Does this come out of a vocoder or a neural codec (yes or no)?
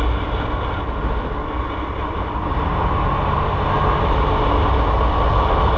no